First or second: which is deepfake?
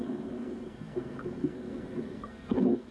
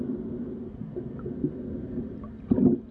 first